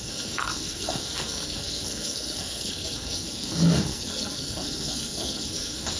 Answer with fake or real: fake